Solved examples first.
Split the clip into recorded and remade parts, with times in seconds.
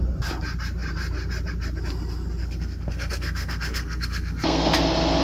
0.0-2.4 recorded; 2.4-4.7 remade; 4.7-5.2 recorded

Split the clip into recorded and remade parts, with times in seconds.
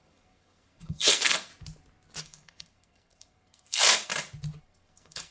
0.0-1.5 remade; 1.5-2.2 recorded; 2.2-4.1 remade; 4.1-4.6 recorded; 4.6-5.3 remade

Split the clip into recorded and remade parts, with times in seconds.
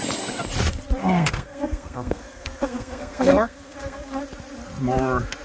0.0-1.0 recorded; 1.0-4.2 remade; 4.2-5.4 recorded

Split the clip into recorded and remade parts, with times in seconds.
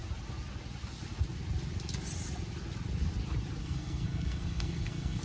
0.0-3.6 recorded; 3.6-5.2 remade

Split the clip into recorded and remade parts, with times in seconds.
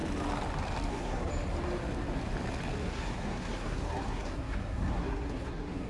0.0-0.9 recorded; 0.9-1.3 remade; 1.3-2.8 recorded; 2.8-5.9 remade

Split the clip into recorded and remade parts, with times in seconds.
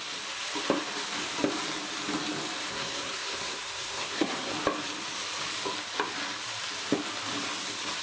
0.0-2.7 recorded; 2.7-4.5 remade; 4.5-8.0 recorded